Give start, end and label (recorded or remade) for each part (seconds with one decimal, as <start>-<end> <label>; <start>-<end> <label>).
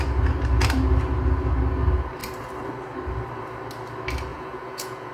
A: 0.0-4.3 recorded; 4.3-5.1 remade